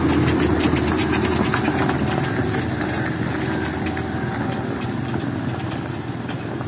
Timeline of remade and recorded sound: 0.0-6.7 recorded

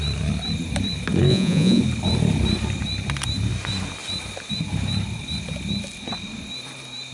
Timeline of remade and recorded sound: 0.0-1.3 recorded; 1.3-1.8 remade; 1.8-7.1 recorded

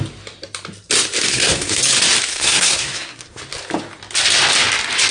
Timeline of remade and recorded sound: 0.0-1.3 recorded; 1.3-1.8 remade; 1.8-2.3 recorded; 2.3-3.4 remade; 3.4-5.1 recorded

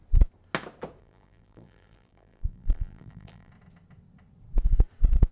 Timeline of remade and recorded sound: 0.0-1.0 recorded; 1.0-3.5 remade; 3.5-5.3 recorded

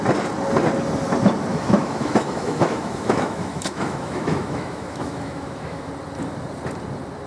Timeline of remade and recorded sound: 0.0-1.5 recorded; 1.5-5.9 remade; 5.9-7.3 recorded

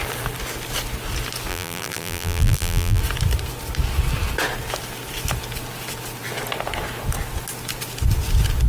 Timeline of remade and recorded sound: 0.0-1.5 recorded; 1.5-3.0 remade; 3.0-8.7 recorded

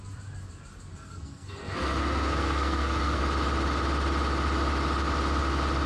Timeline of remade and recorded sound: 0.0-0.9 recorded; 0.9-3.2 remade; 3.2-5.9 recorded

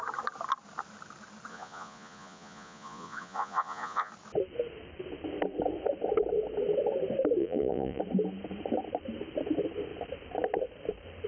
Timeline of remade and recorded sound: 0.0-1.5 recorded; 1.5-4.1 remade; 4.1-7.4 recorded; 7.4-8.0 remade; 8.0-11.3 recorded